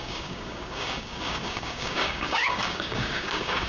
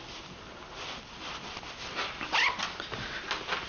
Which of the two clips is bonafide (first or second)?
second